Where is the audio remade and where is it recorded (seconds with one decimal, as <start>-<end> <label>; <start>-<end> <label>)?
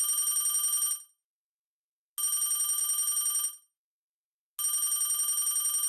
0.0-5.9 recorded